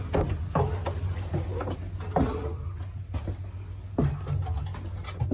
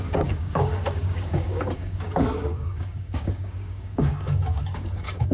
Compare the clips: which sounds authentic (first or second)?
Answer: first